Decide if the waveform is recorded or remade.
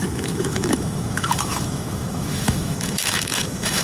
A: remade